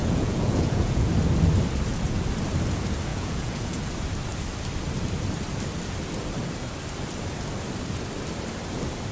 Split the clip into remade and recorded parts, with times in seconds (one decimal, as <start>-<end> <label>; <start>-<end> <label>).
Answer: 0.0-1.1 remade; 1.1-3.1 recorded; 3.1-3.9 remade; 3.9-9.1 recorded